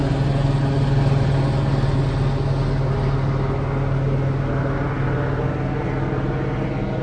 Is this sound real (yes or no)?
yes